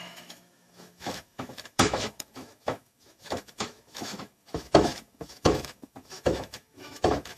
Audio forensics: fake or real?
fake